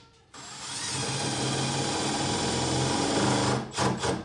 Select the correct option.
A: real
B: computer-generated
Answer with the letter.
A